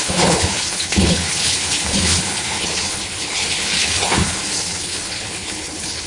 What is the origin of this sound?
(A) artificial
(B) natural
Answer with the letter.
A